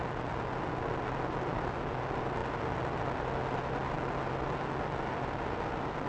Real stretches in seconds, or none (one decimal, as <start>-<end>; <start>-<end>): 0.0-6.1